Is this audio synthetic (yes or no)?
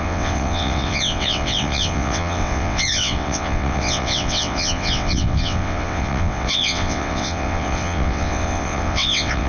yes